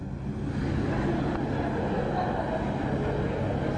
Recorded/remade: recorded